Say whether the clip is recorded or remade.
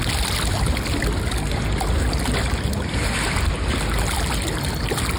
recorded